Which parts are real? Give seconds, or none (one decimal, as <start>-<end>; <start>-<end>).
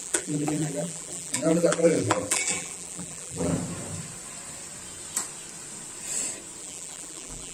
3.5-6.6